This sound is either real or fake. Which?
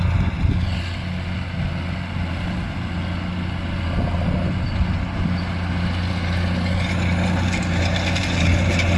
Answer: real